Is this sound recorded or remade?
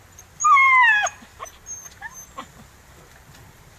recorded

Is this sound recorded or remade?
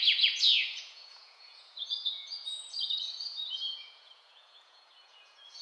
remade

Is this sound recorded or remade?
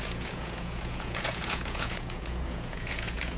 remade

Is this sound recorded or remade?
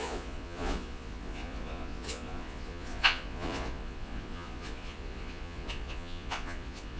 remade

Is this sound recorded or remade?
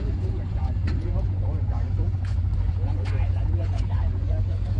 remade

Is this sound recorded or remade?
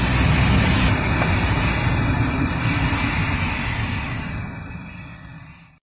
recorded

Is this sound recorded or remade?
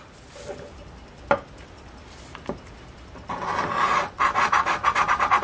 recorded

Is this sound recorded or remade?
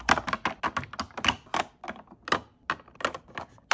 recorded